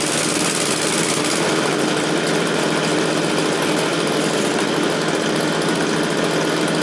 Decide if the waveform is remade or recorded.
recorded